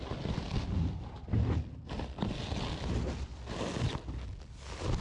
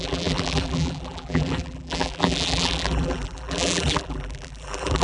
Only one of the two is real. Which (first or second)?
first